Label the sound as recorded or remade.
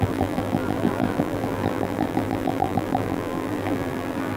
remade